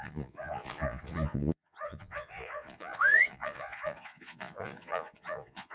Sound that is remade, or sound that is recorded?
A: remade